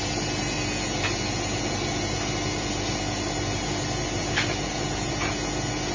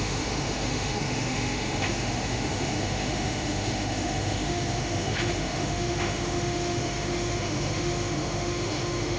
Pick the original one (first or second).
first